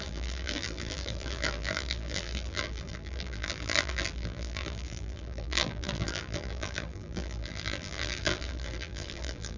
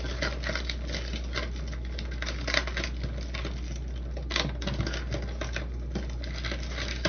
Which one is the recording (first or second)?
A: second